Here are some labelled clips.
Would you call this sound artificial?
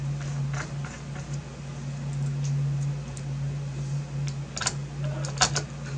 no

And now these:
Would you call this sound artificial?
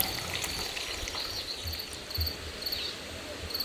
no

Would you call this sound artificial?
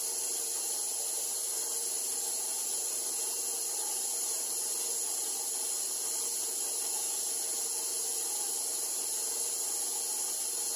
no